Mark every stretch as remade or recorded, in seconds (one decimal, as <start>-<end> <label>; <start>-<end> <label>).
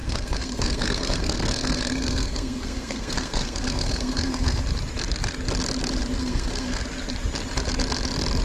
0.0-4.6 remade; 4.6-6.2 recorded; 6.2-6.8 remade; 6.8-8.4 recorded